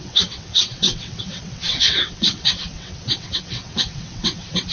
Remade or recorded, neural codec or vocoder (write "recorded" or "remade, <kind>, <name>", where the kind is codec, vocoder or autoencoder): remade, vocoder, WaveNeXt